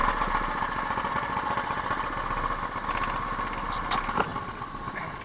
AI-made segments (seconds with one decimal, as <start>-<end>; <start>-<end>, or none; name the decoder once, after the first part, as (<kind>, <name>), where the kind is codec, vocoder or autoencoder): none